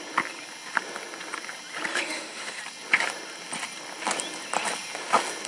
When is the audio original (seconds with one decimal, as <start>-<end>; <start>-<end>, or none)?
0.0-1.9; 2.6-5.5